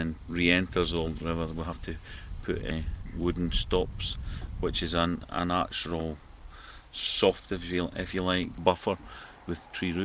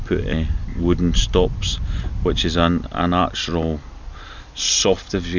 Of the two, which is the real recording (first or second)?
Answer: second